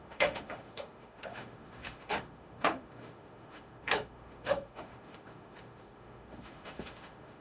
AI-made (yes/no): yes